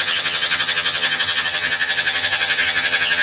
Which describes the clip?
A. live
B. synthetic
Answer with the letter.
B